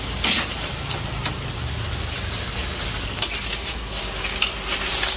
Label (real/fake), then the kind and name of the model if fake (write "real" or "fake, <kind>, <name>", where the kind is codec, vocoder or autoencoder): real